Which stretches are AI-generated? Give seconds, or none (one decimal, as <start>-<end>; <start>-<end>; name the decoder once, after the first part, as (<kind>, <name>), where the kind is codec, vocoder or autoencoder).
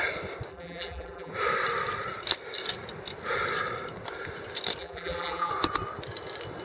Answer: 0.5-1.3 (vocoder, BigVGAN v2); 4.8-5.5